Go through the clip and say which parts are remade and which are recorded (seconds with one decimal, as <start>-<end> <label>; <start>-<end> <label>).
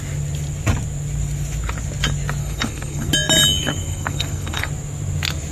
0.0-2.4 recorded; 2.4-3.1 remade; 3.1-3.6 recorded; 3.6-4.7 remade; 4.7-5.5 recorded